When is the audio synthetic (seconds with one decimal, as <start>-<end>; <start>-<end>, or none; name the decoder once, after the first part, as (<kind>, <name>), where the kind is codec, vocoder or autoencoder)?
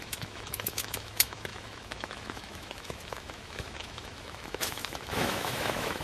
0.0-6.0 (autoencoder, DAC-VAE)